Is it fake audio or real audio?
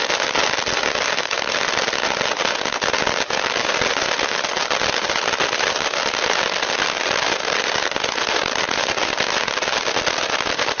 real